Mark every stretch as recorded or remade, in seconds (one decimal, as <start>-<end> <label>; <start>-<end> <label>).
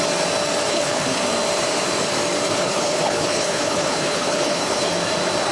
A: 0.0-0.7 recorded; 0.7-1.2 remade; 1.2-2.5 recorded; 2.5-4.9 remade; 4.9-5.5 recorded